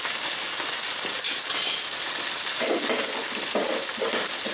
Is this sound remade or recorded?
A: recorded